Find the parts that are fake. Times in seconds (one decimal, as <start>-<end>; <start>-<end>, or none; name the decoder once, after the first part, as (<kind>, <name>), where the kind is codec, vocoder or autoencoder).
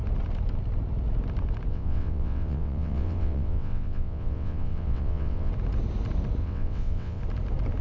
1.7-5.5 (vocoder, WaveNeXt); 6.4-7.2